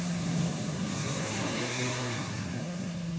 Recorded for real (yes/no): no